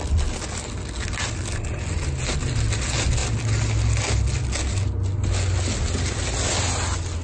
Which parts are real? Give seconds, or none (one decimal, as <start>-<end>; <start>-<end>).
0.0-7.2